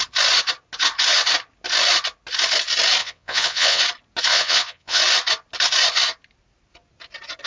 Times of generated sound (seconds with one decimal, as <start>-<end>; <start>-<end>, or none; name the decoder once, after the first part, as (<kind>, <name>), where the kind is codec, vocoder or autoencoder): 3.0-3.8 (vocoder, WaveNeXt); 4.3-5.0